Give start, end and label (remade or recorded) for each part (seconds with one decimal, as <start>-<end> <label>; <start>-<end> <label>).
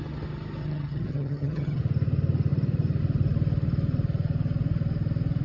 0.0-0.6 recorded; 0.6-1.8 remade; 1.8-5.4 recorded